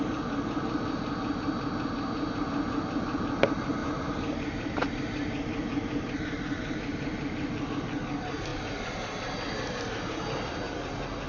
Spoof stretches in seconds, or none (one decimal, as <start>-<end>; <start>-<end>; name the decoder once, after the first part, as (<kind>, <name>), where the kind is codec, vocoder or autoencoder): 3.8-7.7 (vocoder, BigVGAN v2)